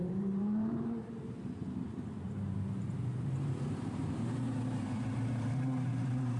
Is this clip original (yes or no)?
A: no